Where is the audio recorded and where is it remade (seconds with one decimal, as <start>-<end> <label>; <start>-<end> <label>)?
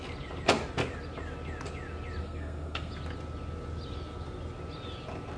0.0-2.2 recorded; 2.2-2.9 remade; 2.9-5.4 recorded